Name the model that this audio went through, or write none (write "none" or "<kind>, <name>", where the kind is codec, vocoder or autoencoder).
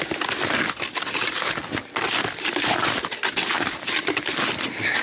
none